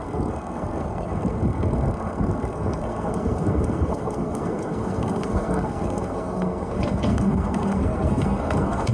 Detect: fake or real fake